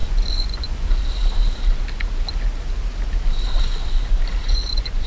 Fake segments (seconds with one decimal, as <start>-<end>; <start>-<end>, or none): 0.0-0.9; 4.4-5.1